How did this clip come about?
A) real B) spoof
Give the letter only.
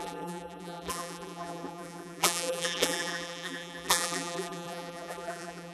B